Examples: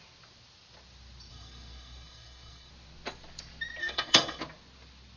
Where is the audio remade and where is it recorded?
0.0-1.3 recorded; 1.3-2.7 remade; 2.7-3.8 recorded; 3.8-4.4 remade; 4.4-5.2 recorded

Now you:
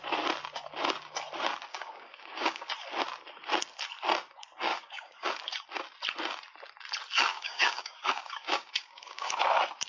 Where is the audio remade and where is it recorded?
0.0-1.7 recorded; 1.7-2.7 remade; 2.7-4.7 recorded; 4.7-5.3 remade; 5.3-7.3 recorded; 7.3-9.4 remade; 9.4-9.9 recorded

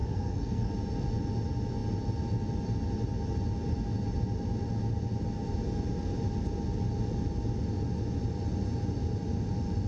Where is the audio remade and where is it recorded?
0.0-0.7 remade; 0.7-9.9 recorded

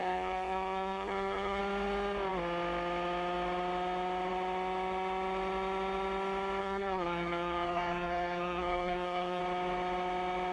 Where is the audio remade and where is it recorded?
0.0-1.6 remade; 1.6-6.6 recorded; 6.6-9.4 remade; 9.4-10.5 recorded

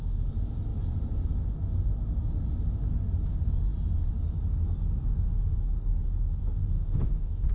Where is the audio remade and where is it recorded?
0.0-6.4 recorded; 6.4-7.5 remade

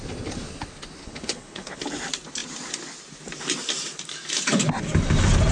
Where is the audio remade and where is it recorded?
0.0-1.0 recorded; 1.0-1.8 remade; 1.8-5.5 recorded

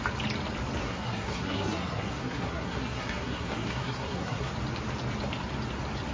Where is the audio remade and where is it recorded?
0.0-0.8 recorded; 0.8-4.5 remade; 4.5-6.1 recorded